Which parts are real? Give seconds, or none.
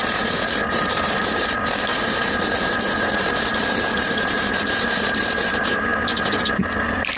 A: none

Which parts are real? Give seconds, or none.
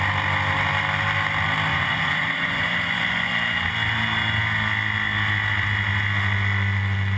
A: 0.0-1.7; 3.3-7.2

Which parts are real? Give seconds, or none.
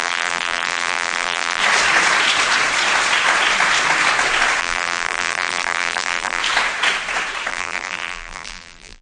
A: 1.6-4.6; 6.4-7.5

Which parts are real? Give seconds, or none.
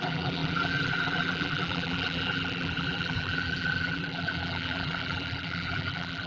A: none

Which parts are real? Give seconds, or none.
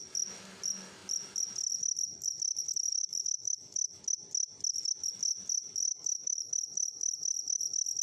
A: 0.0-3.0; 4.0-5.9; 6.5-8.0